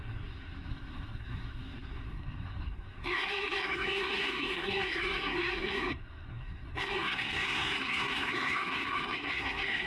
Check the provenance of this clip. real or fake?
fake